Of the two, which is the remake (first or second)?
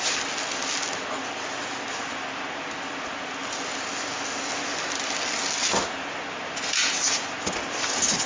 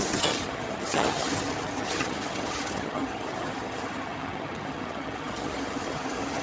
second